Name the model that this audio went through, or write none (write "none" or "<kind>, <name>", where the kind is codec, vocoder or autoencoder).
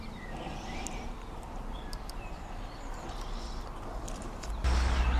none